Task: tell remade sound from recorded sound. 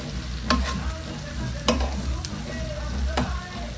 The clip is recorded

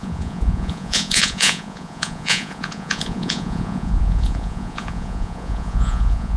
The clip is remade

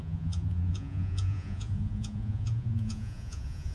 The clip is remade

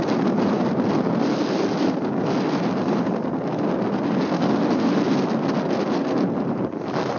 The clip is recorded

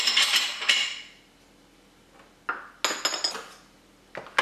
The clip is recorded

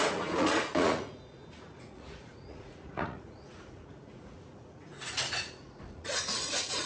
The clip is remade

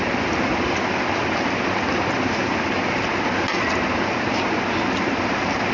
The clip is recorded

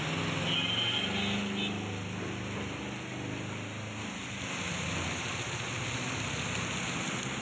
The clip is recorded